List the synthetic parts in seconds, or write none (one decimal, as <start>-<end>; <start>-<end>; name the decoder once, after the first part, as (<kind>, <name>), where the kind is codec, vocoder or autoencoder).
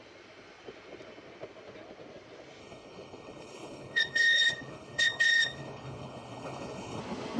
2.6-7.0 (codec, HILCodec)